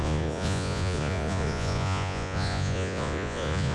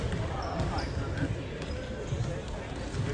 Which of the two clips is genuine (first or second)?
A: second